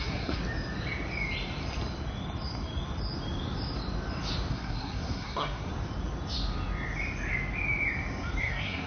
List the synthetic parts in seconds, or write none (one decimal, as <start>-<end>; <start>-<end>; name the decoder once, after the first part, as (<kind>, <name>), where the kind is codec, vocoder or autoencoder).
0.0-0.4 (codec, SNAC); 4.5-5.7; 8.4-8.9